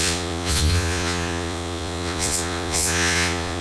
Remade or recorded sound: remade